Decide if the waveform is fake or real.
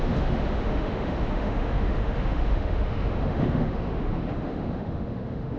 fake